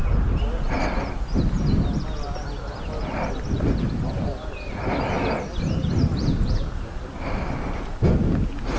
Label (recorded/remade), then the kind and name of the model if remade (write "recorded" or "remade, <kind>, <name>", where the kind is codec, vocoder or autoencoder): recorded